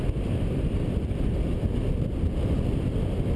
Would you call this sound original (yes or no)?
no